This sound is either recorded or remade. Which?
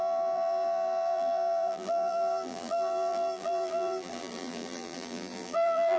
remade